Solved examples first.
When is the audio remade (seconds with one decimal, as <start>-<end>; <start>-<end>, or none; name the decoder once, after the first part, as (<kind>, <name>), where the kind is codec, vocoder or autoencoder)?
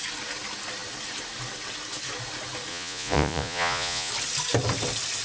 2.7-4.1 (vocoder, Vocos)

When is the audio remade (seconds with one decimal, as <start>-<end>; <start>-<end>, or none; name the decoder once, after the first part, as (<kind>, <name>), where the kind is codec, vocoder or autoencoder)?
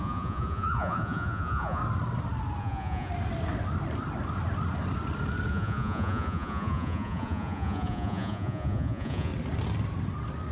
0.0-1.8 (vocoder, Vocos); 2.6-3.1; 5.5-9.3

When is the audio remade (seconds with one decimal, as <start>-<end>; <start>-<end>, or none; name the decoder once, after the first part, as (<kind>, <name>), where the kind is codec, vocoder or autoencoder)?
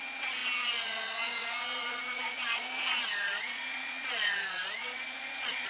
0.0-5.7 (vocoder, Vocos)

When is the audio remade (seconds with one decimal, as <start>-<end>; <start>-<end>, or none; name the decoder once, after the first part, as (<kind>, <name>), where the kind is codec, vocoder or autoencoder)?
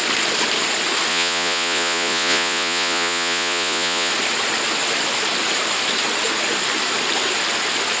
1.1-4.1 (vocoder, Vocos)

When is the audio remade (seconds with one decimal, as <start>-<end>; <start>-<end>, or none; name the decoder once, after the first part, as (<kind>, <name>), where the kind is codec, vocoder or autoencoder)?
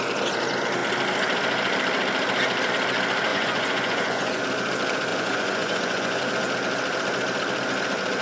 3.3-4.4 (vocoder, Vocos); 5.1-6.2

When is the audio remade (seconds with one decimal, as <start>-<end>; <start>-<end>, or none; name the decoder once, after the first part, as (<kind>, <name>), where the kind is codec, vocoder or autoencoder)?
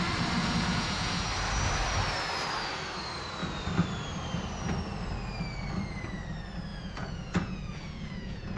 0.4-1.3 (vocoder, Vocos); 6.7-8.6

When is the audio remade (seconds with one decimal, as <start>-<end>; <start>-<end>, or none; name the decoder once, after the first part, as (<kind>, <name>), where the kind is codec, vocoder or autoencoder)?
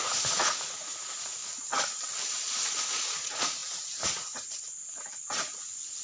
0.0-1.4 (vocoder, Vocos); 2.8-6.0